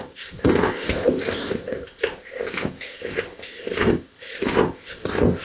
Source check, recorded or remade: remade